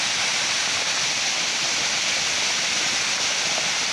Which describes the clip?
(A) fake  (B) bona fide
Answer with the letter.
B